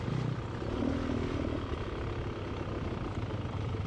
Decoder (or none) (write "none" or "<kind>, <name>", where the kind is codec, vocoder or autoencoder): none